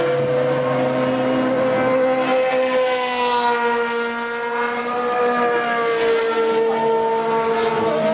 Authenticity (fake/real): real